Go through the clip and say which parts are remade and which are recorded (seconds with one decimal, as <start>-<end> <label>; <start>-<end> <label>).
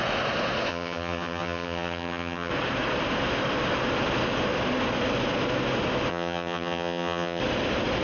0.0-0.7 recorded; 0.7-2.5 remade; 2.5-6.1 recorded; 6.1-7.4 remade; 7.4-8.0 recorded